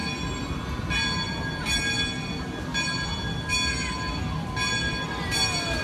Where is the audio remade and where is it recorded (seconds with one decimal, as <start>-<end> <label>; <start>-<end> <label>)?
0.0-5.8 recorded

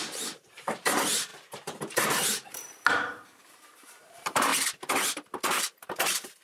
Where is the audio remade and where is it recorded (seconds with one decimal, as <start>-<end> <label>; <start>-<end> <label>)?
0.0-4.5 remade; 4.5-5.6 recorded; 5.6-6.4 remade

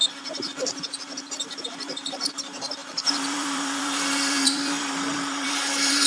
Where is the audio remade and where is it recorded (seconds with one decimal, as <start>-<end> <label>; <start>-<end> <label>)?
0.0-6.1 remade

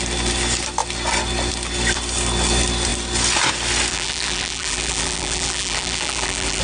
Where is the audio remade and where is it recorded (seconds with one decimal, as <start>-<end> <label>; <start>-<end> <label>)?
0.0-3.9 recorded; 3.9-6.6 remade

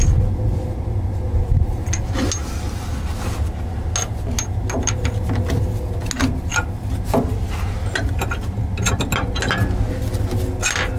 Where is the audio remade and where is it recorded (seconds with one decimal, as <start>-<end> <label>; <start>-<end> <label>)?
0.0-2.4 recorded; 2.4-2.9 remade; 2.9-11.0 recorded

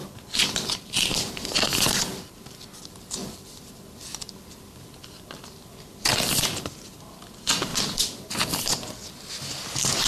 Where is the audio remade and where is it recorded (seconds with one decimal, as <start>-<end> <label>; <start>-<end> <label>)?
0.0-1.3 remade; 1.3-3.2 recorded; 3.2-7.0 remade; 7.0-7.7 recorded; 7.7-8.3 remade; 8.3-10.1 recorded

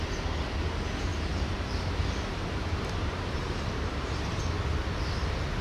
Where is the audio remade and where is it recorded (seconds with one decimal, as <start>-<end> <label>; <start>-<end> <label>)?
0.0-1.1 recorded; 1.1-1.7 remade; 1.7-2.6 recorded; 2.6-4.4 remade; 4.4-5.6 recorded

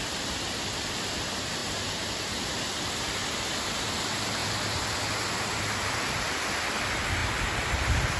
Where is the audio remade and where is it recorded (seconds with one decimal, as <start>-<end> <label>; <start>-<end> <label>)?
0.0-1.6 remade; 1.6-2.8 recorded; 2.8-4.4 remade; 4.4-5.6 recorded; 5.6-8.2 remade